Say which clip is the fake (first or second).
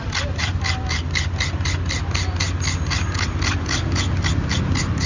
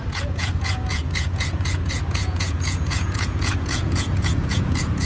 second